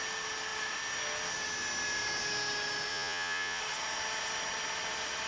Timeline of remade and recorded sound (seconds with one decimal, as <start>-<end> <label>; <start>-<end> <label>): 0.0-2.9 recorded; 2.9-3.6 remade; 3.6-5.3 recorded

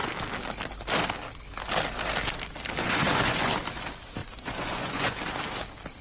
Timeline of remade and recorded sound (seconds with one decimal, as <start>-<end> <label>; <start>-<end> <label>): 0.0-2.8 recorded; 2.8-3.5 remade; 3.5-4.2 recorded; 4.2-5.2 remade; 5.2-6.0 recorded

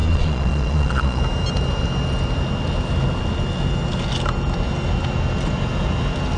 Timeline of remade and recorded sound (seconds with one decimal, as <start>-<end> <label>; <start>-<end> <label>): 0.0-1.2 remade; 1.2-6.4 recorded